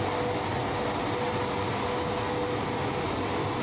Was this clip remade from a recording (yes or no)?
no